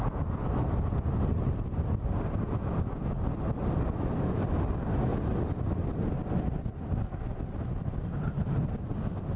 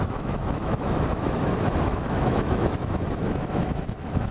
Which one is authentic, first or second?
first